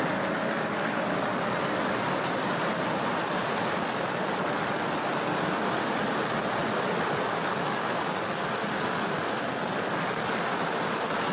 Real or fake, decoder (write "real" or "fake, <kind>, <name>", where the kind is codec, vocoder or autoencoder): real